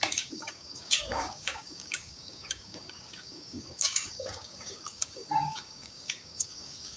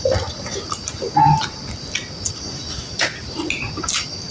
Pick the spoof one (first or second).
first